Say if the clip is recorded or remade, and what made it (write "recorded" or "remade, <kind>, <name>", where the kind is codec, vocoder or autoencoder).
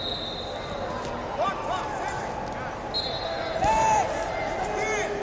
recorded